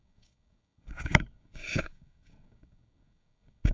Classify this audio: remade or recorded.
remade